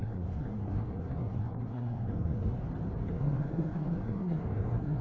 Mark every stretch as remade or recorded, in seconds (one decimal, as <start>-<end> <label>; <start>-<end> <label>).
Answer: 0.0-2.6 remade; 2.6-3.1 recorded; 3.1-5.0 remade